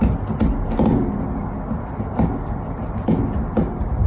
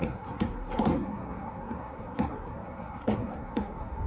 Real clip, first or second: first